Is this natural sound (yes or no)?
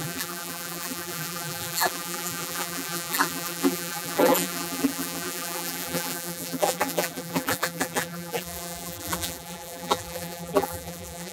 no